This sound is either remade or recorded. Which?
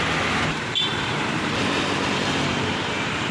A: remade